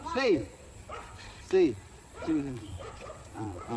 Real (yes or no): no